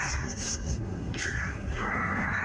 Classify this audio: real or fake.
fake